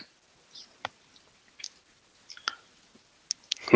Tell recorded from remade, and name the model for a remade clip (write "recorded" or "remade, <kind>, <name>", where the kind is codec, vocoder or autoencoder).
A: recorded